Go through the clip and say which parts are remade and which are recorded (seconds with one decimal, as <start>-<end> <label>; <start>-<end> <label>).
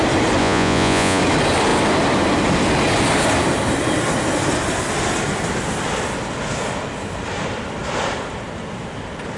0.0-0.4 recorded; 0.4-1.2 remade; 1.2-9.4 recorded